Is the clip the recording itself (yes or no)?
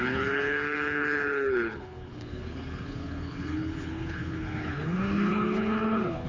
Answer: no